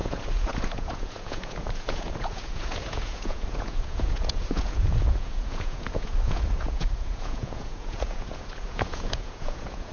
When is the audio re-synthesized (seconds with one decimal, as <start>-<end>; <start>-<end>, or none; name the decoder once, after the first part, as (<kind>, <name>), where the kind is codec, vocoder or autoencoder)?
0.0-9.9 (vocoder, Vocos)